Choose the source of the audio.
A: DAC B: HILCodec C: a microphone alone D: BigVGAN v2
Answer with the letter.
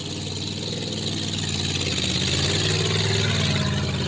C